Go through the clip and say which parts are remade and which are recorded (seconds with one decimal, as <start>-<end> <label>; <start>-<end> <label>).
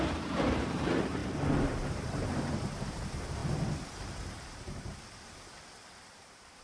0.0-1.2 remade; 1.2-1.9 recorded; 1.9-3.4 remade; 3.4-4.0 recorded; 4.0-4.9 remade; 4.9-6.1 recorded; 6.1-6.6 remade